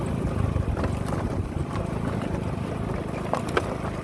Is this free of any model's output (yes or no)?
yes